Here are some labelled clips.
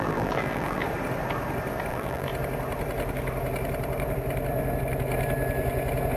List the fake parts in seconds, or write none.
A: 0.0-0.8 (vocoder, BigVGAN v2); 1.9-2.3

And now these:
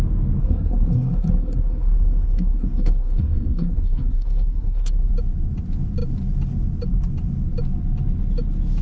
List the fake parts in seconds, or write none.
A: 0.4-5.1 (codec, SNAC)

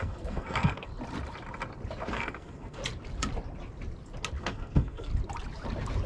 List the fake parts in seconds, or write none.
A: 0.0-0.9 (codec, SNAC); 2.1-2.8; 4.4-5.1

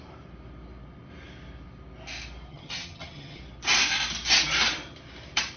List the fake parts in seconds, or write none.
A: 2.5-3.4 (vocoder, HiFi-GAN)